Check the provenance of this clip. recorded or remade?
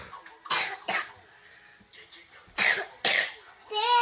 recorded